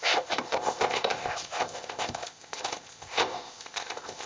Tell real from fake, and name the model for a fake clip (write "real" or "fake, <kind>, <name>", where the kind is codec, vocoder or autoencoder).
fake, codec, ZipCodec